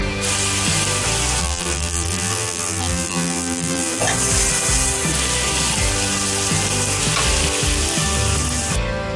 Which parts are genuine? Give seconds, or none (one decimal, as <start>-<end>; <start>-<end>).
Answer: 0.0-1.4; 4.0-9.2